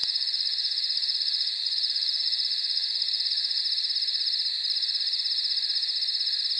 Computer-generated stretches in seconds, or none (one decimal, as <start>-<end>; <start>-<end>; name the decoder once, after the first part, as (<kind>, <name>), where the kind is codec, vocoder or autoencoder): 0.0-3.6 (vocoder, Vocos)